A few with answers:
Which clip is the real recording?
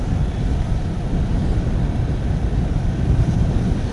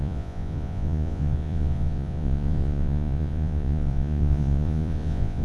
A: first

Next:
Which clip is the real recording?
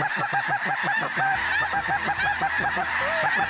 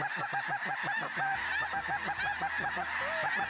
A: second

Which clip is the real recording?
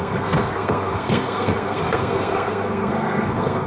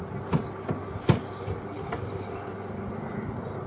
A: second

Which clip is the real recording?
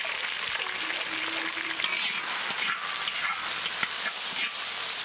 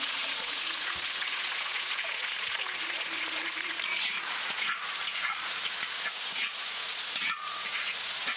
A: first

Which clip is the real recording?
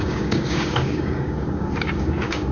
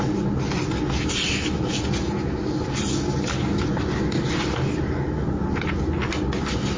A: second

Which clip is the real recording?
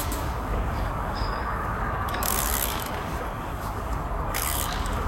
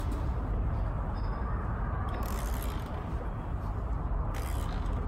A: second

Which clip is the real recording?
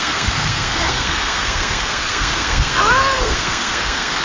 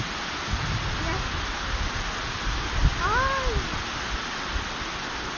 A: second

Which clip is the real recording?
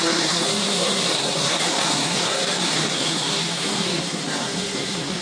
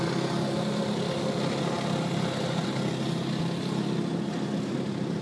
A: second